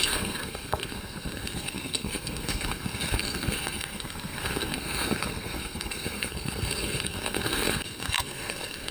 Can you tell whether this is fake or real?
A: fake